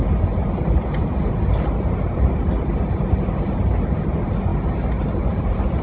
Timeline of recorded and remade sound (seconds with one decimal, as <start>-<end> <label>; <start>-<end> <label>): 0.0-5.8 recorded